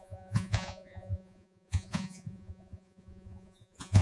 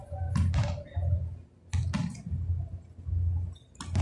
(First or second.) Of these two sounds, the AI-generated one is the first